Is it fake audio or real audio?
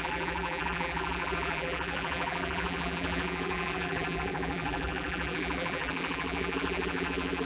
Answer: fake